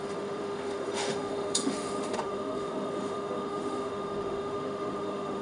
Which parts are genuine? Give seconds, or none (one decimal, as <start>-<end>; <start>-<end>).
none